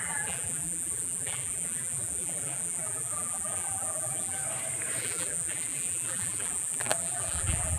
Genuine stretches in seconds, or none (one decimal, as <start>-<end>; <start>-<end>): 4.4-5.0